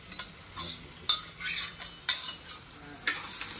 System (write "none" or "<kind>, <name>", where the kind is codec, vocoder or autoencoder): none